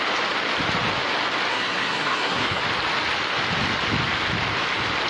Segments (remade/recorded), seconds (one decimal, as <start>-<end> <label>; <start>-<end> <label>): 0.0-1.5 recorded; 1.5-2.6 remade; 2.6-5.1 recorded